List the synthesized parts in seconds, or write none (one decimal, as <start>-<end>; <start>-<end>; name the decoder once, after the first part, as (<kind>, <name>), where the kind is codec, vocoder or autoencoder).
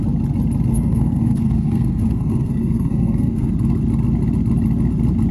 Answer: 0.7-3.5 (codec, SNAC)